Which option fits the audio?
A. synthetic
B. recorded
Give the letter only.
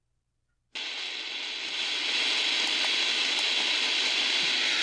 B